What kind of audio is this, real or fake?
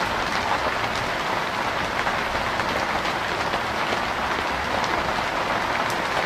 real